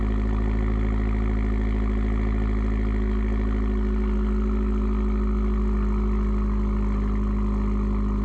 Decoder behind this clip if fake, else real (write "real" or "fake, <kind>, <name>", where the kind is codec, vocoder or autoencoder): real